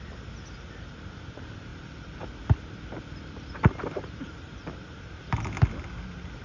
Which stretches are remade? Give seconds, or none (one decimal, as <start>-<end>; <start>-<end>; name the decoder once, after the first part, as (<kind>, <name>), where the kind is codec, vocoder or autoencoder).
none